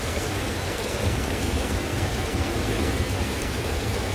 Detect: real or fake fake